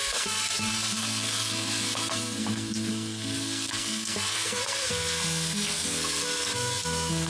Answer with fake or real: fake